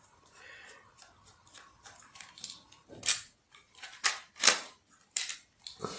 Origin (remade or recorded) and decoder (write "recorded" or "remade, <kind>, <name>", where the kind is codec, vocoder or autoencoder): recorded